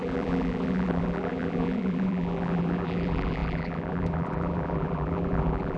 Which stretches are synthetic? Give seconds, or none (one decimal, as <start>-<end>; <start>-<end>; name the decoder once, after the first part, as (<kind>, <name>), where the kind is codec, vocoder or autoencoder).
0.0-5.8 (vocoder, BigVGAN v2)